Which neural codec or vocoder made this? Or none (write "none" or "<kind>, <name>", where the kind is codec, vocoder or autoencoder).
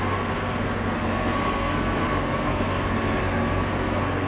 codec, SNAC